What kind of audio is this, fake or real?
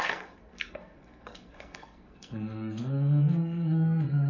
fake